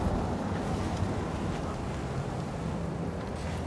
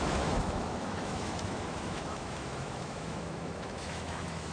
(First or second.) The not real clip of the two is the second